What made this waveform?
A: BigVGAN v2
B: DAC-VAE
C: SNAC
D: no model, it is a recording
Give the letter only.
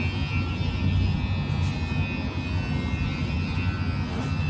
D